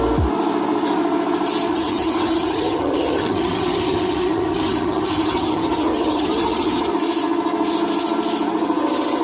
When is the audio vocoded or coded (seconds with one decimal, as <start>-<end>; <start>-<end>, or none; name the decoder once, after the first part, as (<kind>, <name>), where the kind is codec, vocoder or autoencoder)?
1.7-6.9 (vocoder, HiFi-GAN)

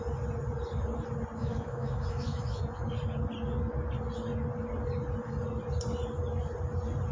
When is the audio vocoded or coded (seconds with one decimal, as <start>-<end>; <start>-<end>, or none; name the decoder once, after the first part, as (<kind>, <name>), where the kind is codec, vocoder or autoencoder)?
1.4-2.6 (autoencoder, DAC-VAE)

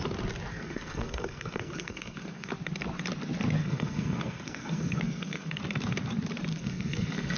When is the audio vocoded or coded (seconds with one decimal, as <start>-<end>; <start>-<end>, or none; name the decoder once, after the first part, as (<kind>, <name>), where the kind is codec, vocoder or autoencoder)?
0.5-2.5 (codec, SNAC); 3.6-5.6; 6.5-7.4

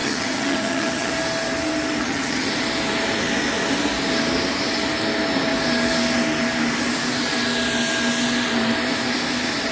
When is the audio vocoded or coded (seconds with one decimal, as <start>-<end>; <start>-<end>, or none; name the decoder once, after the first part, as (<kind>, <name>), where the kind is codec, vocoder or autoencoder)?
0.0-1.1 (vocoder, HiFi-GAN); 2.0-2.5

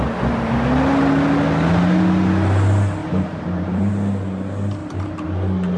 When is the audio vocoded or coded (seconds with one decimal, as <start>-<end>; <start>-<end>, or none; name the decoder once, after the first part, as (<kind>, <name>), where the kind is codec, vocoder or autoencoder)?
3.0-3.9 (vocoder, BigVGAN v2); 4.8-5.3